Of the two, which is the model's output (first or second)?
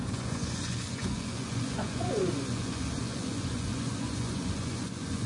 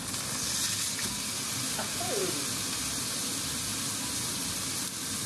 first